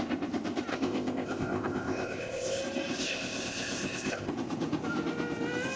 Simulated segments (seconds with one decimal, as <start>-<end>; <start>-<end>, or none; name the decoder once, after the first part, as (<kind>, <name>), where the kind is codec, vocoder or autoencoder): 0.7-2.6 (codec, ZipCodec); 3.0-4.3